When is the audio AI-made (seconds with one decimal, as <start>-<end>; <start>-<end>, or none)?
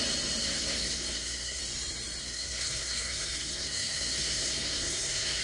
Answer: 0.4-1.6; 2.2-5.4